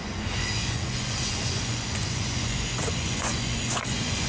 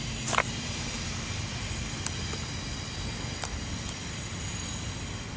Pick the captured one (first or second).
second